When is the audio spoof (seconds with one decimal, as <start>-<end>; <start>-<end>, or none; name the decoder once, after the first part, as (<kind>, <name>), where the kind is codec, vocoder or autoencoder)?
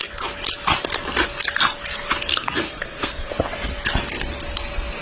2.3-3.3 (codec, SNAC)